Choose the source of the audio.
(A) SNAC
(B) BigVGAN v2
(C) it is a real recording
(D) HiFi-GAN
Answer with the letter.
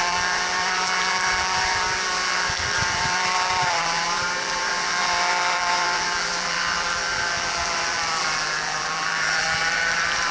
B